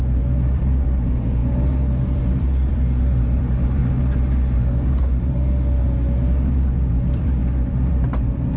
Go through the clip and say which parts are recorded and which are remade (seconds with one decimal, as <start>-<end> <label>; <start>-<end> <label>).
0.0-3.8 remade; 3.8-6.9 recorded; 6.9-8.6 remade